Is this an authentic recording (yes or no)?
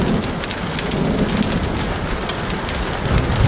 yes